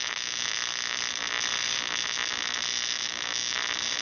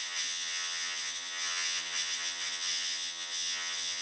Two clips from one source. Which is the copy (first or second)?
second